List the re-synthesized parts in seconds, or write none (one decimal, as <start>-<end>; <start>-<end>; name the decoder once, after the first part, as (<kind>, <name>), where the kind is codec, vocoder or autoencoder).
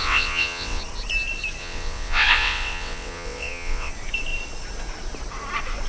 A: 0.0-0.8 (vocoder, WaveNeXt); 1.6-3.9